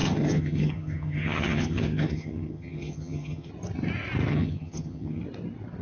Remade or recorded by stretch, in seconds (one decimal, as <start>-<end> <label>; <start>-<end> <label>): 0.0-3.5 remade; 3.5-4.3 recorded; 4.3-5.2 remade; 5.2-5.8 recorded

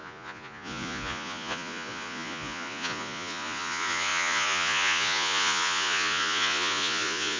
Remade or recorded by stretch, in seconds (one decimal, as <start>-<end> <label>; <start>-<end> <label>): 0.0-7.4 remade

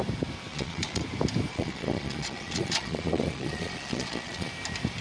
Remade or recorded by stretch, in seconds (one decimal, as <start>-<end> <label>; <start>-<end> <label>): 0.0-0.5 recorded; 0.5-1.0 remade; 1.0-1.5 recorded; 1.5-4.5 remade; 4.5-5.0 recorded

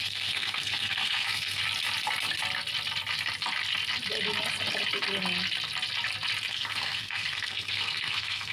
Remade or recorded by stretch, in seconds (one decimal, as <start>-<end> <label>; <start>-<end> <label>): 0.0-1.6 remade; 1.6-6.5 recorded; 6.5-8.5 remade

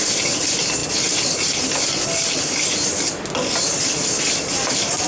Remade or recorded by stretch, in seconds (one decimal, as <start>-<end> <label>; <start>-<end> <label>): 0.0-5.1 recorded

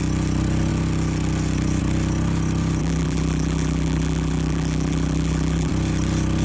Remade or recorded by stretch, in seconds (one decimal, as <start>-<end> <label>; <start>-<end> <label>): 0.0-2.8 recorded; 2.8-5.7 remade; 5.7-6.4 recorded

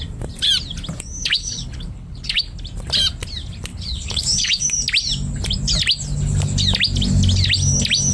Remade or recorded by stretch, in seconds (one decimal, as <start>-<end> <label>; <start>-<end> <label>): 0.0-1.2 recorded; 1.2-2.4 remade; 2.4-3.7 recorded; 3.7-4.6 remade; 4.6-8.1 recorded

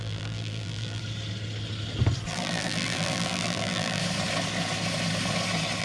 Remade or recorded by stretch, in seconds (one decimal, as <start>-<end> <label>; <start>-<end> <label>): 0.0-1.0 remade; 1.0-2.3 recorded; 2.3-4.0 remade; 4.0-5.8 recorded